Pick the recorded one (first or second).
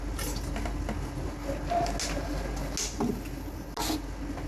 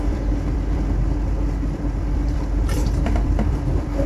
first